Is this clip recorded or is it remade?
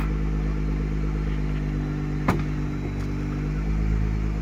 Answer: recorded